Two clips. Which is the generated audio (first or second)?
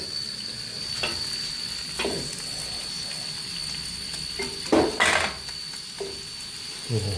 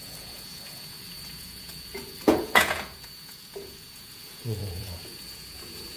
second